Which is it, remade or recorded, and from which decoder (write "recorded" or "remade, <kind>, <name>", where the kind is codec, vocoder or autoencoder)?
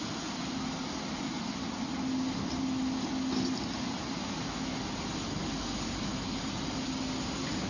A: recorded